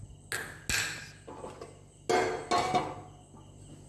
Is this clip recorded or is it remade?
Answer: recorded